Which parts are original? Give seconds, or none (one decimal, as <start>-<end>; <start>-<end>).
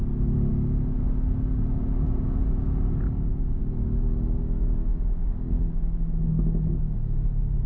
0.0-7.7